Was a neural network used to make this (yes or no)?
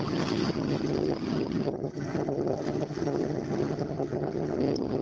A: yes